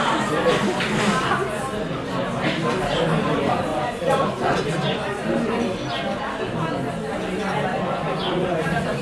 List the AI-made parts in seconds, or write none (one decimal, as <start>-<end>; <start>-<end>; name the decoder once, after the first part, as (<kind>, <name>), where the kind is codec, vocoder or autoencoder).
3.7-4.6 (vocoder, Vocos); 7.7-9.0